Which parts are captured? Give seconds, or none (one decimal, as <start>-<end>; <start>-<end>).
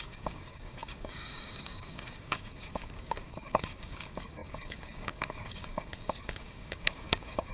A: none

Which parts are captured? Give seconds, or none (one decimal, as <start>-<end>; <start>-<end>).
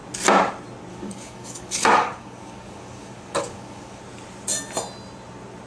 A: 0.0-0.9; 4.0-5.7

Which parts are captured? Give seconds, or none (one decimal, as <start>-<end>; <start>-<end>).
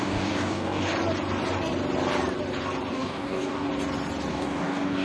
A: 0.9-2.9; 3.7-4.3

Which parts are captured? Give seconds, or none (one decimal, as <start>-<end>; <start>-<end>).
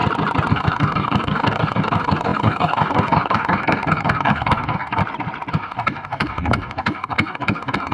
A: 0.0-0.5; 5.0-5.5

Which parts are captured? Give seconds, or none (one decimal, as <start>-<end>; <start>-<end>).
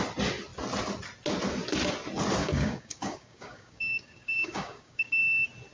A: 0.0-2.4; 5.2-5.7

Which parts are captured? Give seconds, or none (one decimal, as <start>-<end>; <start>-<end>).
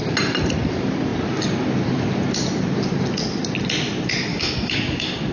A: 0.0-4.3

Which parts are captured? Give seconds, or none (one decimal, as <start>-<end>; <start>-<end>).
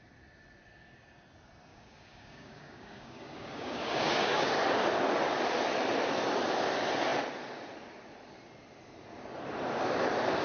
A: 0.0-1.7; 4.5-10.4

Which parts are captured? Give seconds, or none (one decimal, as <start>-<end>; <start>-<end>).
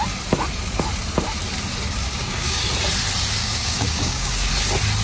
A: 0.0-2.0; 2.6-3.4; 4.5-5.0